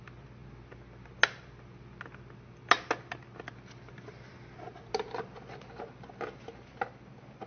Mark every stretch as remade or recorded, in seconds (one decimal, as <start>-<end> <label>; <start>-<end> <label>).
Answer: 0.0-7.5 recorded